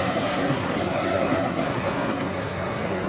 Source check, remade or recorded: remade